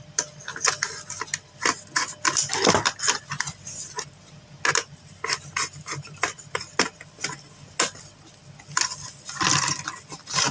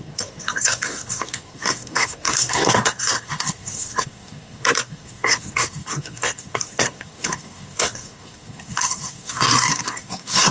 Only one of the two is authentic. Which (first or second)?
first